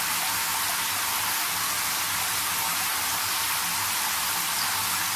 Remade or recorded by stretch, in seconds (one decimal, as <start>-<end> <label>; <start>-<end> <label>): 0.0-5.2 recorded